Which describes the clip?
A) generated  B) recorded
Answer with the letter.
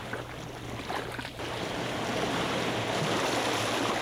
B